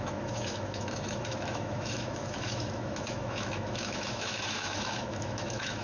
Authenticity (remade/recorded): remade